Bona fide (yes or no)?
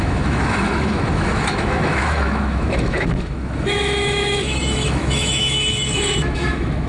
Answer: no